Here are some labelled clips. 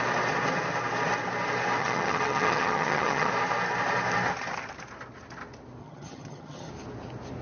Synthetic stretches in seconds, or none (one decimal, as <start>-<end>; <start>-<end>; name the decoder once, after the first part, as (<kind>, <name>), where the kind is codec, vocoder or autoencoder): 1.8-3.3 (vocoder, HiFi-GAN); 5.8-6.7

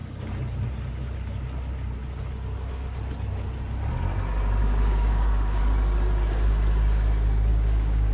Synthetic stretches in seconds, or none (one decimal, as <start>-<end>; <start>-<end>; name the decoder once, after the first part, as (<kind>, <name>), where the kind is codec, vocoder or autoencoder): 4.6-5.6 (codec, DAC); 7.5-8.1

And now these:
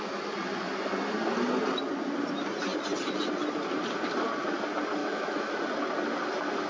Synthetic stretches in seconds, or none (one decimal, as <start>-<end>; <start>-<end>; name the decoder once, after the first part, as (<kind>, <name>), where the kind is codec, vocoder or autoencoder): 5.0-5.5 (autoencoder, DAC-VAE)

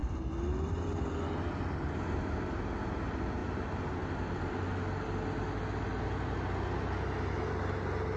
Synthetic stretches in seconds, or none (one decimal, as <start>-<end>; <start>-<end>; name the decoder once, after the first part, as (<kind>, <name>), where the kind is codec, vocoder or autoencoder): none